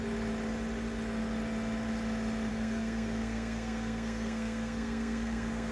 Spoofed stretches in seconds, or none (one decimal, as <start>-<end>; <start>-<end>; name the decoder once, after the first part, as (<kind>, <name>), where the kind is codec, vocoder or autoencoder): 2.5-5.7 (codec, SNAC)